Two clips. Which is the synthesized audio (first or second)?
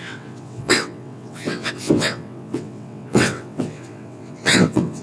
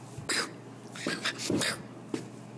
first